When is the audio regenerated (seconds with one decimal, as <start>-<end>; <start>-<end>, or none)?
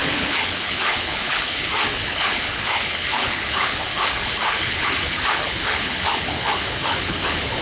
0.0-7.6